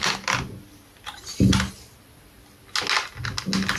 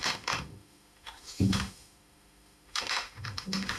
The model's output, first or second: second